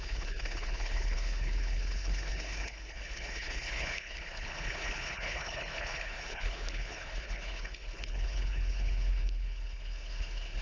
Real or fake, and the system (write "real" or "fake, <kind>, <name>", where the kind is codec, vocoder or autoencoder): fake, codec, HILCodec